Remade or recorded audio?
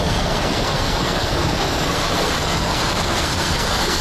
remade